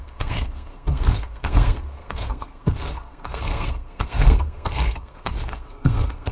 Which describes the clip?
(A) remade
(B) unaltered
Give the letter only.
A